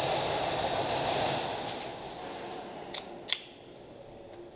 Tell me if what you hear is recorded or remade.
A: recorded